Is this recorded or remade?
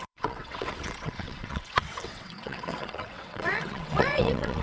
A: remade